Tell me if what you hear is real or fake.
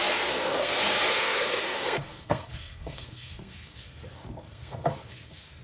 fake